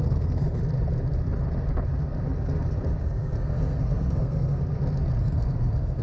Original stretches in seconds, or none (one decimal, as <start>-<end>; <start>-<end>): 0.6-3.0; 4.6-5.2